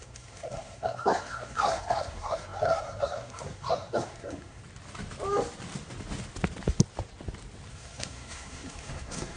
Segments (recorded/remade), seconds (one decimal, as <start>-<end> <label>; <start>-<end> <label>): 0.0-4.6 remade; 4.6-7.7 recorded; 7.7-9.4 remade